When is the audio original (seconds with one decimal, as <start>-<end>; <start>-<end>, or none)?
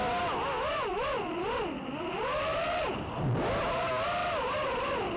0.0-0.9; 3.2-4.2